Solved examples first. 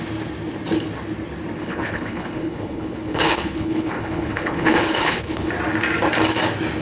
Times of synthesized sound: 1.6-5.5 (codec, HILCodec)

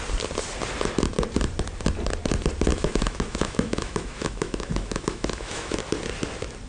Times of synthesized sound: 2.7-5.8 (autoencoder, DAC-VAE)

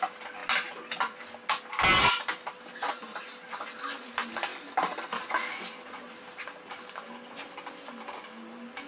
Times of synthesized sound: none

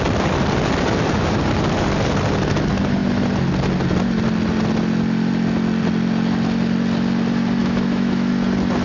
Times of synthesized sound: 7.6-8.3 (autoencoder, DAC-VAE)

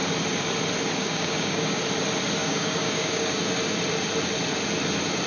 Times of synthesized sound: 1.0-1.8 (codec, DAC); 2.4-3.4